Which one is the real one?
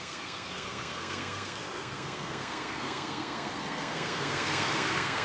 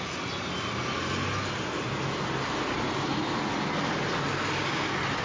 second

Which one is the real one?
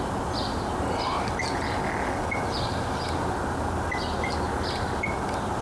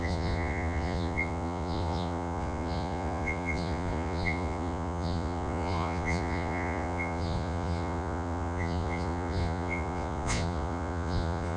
first